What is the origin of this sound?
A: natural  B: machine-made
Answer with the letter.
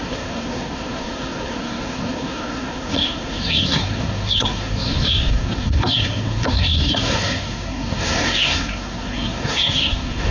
B